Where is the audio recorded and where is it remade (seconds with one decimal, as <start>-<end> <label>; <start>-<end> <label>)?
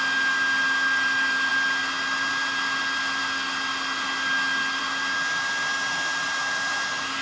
0.0-7.2 recorded